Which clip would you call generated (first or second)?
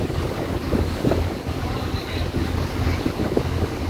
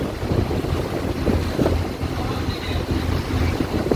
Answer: first